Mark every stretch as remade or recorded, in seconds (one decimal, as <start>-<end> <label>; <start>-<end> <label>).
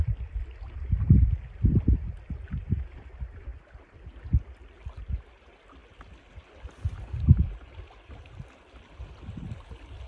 0.0-10.1 recorded